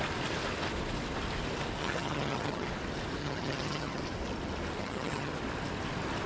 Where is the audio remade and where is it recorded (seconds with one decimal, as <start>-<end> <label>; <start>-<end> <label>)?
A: 0.0-1.8 recorded; 1.8-2.7 remade; 2.7-3.2 recorded; 3.2-4.0 remade; 4.0-4.8 recorded; 4.8-5.3 remade; 5.3-6.3 recorded

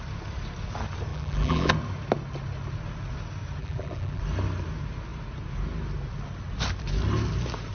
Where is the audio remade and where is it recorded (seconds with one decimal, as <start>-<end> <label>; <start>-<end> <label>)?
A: 0.0-1.1 recorded; 1.1-1.7 remade; 1.7-3.6 recorded; 3.6-4.2 remade; 4.2-7.7 recorded

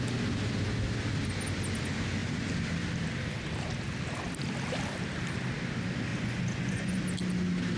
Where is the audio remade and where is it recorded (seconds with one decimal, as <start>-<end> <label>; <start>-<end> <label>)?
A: 0.0-6.1 recorded; 6.1-7.0 remade; 7.0-7.8 recorded

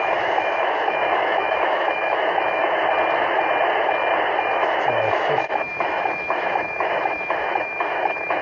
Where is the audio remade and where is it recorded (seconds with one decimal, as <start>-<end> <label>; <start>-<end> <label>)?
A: 0.0-2.6 remade; 2.6-4.5 recorded; 4.5-8.4 remade

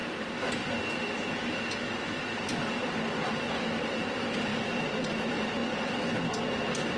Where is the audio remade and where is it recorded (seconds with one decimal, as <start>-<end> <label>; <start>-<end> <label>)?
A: 0.0-4.5 recorded; 4.5-5.1 remade; 5.1-7.0 recorded

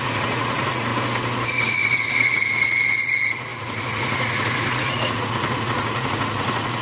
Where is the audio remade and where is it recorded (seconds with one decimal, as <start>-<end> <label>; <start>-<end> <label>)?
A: 0.0-0.9 remade; 0.9-1.7 recorded; 1.7-6.8 remade

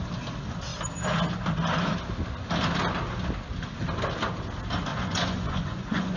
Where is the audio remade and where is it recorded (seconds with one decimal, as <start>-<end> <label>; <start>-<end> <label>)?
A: 0.0-4.9 recorded; 4.9-6.2 remade

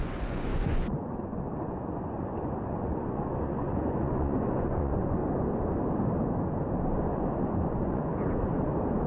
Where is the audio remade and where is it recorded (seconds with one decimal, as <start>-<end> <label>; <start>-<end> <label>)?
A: 0.0-5.2 remade; 5.2-6.8 recorded; 6.8-8.1 remade; 8.1-9.1 recorded